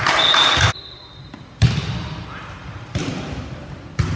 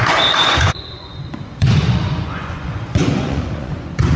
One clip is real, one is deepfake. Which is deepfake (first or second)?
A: second